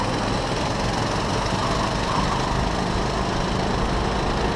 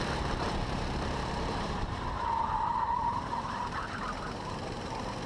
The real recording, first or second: first